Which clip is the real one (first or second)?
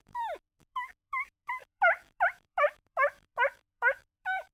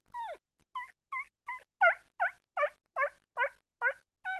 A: second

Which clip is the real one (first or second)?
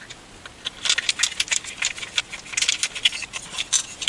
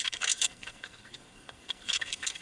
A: first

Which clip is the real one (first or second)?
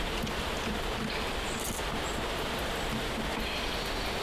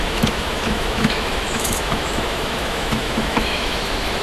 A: first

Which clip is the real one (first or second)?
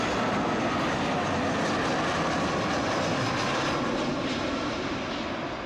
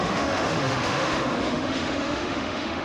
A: first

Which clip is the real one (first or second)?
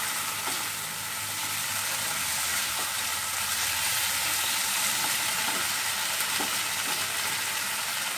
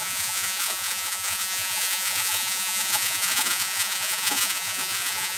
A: first